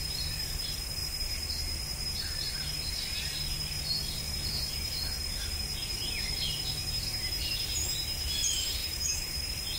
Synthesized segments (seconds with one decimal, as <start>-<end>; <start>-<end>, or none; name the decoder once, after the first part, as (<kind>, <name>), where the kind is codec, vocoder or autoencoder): 8.8-9.3 (autoencoder, DAC-VAE)